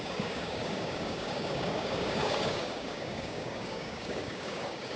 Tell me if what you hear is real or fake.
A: fake